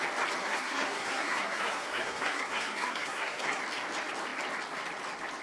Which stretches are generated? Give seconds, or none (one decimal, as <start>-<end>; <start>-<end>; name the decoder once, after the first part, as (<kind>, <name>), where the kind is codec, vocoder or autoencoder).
0.4-3.6 (codec, SNAC)

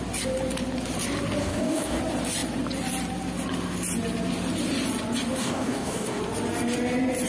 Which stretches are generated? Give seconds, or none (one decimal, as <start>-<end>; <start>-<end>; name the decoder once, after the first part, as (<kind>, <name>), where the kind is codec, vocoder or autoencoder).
1.4-2.0 (codec, DAC); 5.4-6.2

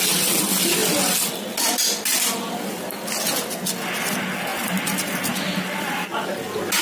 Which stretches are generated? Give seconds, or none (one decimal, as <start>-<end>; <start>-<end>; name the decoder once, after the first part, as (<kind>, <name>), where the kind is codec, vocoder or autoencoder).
none

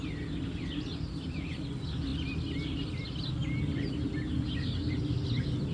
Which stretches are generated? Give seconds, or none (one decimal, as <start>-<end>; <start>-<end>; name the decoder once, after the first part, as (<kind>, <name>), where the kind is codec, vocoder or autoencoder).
none

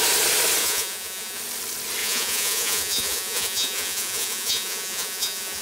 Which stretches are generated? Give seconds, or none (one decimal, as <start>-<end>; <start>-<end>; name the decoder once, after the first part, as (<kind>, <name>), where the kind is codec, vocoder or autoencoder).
0.6-1.4 (vocoder, Vocos); 2.0-5.6